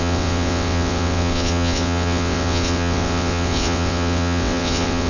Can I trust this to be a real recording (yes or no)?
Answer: no